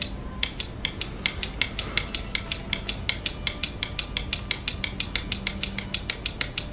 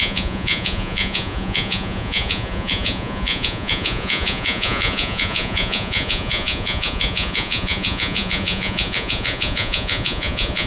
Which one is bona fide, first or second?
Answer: first